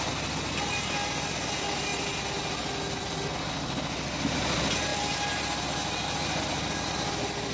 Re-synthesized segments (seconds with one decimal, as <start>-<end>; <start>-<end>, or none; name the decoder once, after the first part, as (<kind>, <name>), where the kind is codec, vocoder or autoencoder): none